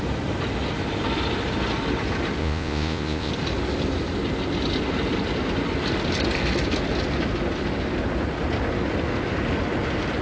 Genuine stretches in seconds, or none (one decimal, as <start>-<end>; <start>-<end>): 0.0-2.4; 3.3-10.2